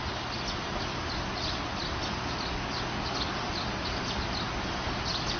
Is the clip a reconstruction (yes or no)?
no